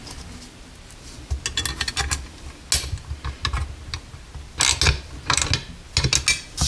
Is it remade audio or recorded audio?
recorded